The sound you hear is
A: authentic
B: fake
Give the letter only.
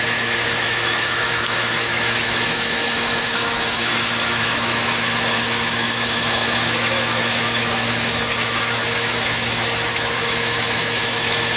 B